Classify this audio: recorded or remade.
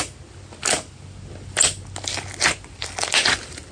recorded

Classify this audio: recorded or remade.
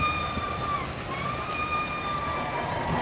recorded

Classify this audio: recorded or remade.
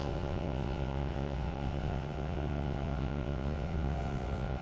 remade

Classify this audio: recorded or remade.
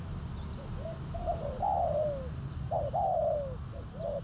recorded